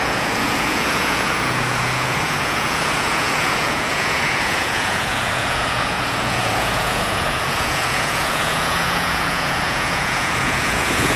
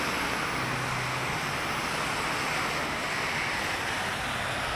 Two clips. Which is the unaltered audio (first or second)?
second